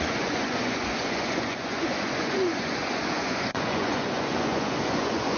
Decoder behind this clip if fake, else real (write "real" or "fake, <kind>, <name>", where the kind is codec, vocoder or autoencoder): fake, vocoder, Vocos